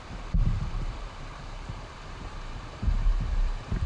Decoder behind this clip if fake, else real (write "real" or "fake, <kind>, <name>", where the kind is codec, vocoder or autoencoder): fake, vocoder, BigVGAN v2